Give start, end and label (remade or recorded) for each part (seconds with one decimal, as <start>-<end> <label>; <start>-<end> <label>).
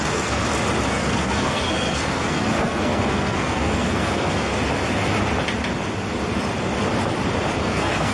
0.0-0.4 remade; 0.4-0.9 recorded; 0.9-4.5 remade; 4.5-7.6 recorded; 7.6-8.1 remade